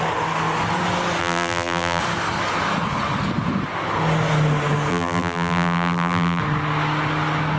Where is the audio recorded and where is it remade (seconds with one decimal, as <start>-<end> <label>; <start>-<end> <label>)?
0.0-1.2 recorded; 1.2-2.0 remade; 2.0-4.9 recorded; 4.9-6.4 remade; 6.4-7.6 recorded